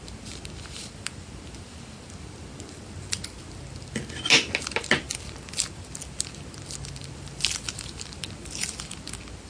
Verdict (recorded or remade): recorded